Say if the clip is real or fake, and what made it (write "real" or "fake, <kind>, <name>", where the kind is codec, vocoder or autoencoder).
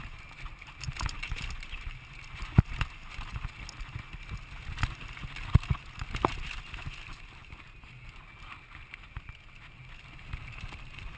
real